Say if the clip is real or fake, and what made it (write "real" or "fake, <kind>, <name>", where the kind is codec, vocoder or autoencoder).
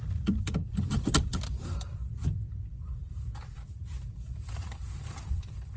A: fake, vocoder, BigVGAN v2